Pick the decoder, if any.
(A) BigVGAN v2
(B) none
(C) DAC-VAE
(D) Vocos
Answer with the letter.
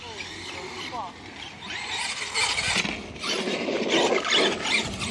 B